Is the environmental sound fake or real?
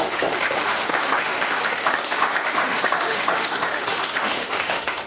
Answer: fake